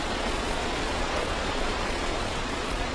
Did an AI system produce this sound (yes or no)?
yes